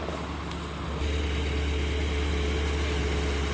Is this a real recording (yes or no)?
yes